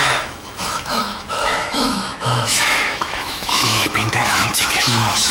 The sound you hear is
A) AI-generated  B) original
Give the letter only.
A